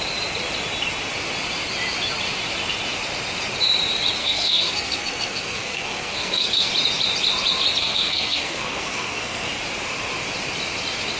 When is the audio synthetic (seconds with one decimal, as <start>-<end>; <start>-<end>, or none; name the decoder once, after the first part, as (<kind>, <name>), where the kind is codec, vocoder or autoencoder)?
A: 4.2-6.7 (codec, SNAC); 7.8-9.5

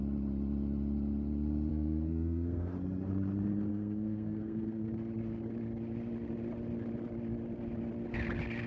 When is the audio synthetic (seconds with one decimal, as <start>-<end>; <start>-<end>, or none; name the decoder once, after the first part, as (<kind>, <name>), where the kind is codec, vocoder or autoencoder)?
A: 1.7-2.7 (codec, SNAC); 3.7-4.9

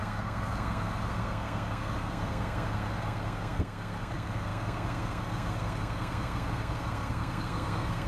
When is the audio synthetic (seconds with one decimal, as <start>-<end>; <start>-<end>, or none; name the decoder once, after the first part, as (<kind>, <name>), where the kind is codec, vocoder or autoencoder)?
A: 0.0-8.1 (codec, SNAC)

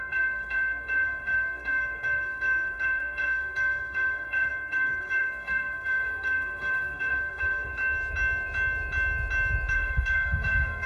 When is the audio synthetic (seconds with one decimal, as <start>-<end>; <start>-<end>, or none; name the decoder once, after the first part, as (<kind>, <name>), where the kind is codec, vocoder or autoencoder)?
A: 0.0-7.7 (codec, SNAC); 9.7-10.9

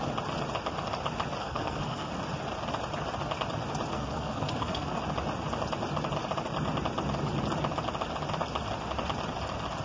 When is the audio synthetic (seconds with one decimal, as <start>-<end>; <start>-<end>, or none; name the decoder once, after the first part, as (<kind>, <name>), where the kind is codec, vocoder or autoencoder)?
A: 1.4-2.1 (codec, SNAC); 3.9-5.0

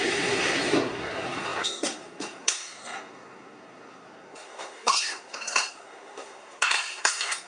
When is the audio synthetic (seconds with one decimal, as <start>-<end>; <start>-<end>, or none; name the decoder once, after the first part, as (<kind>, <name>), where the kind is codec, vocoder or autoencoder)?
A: 0.0-7.5 (codec, SNAC)

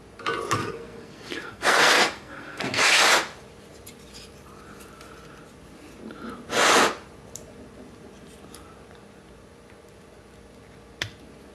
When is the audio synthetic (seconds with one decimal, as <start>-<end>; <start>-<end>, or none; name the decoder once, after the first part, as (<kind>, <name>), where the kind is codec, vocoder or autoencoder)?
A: 0.6-3.0 (codec, SNAC)